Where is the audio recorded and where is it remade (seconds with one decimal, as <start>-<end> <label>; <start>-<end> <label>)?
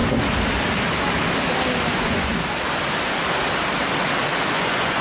0.0-1.9 recorded; 1.9-2.3 remade; 2.3-4.5 recorded; 4.5-5.0 remade